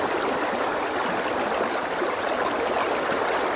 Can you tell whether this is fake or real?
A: real